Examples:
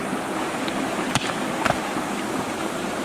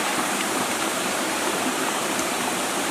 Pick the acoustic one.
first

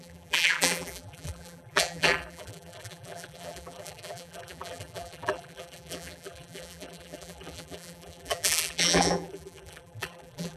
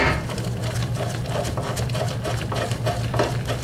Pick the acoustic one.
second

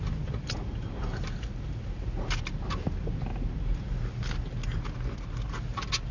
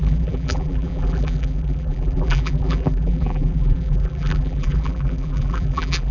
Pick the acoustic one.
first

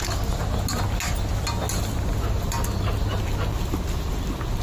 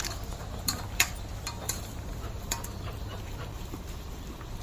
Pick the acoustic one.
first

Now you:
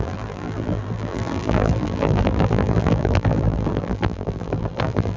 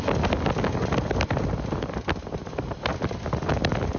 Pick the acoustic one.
second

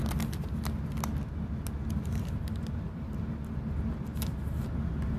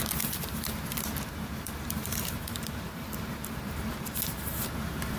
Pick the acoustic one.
first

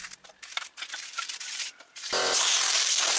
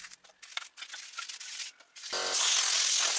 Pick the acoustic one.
second